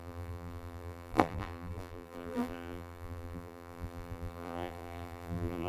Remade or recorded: remade